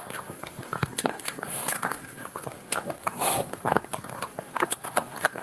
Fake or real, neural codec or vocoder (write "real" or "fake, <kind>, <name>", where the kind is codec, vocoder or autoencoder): fake, codec, SNAC